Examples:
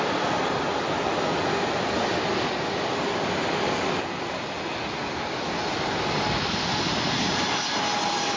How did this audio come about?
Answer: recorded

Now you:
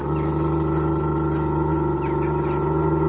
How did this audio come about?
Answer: recorded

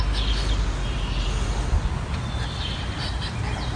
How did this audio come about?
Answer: recorded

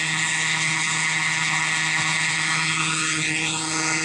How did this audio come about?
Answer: remade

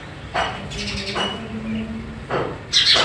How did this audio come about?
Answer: recorded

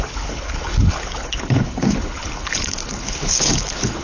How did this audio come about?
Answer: remade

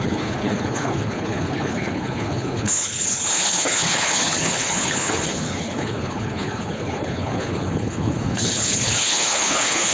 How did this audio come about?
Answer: remade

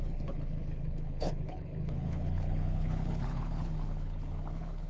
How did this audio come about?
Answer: remade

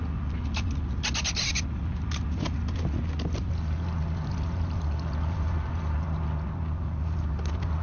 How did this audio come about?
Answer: recorded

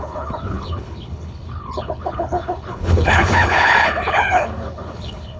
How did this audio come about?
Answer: remade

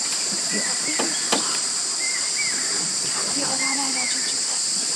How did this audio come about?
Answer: recorded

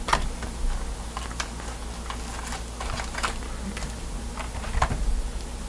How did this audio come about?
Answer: recorded